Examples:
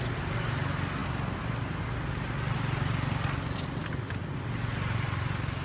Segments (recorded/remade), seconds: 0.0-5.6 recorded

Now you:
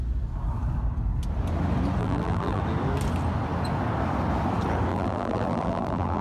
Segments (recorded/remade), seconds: 0.0-2.0 recorded; 2.0-2.6 remade; 2.6-4.9 recorded; 4.9-6.2 remade

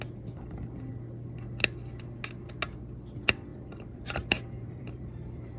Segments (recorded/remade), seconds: 0.0-3.5 recorded; 3.5-5.6 remade